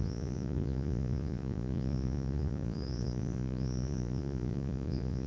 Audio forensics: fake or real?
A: fake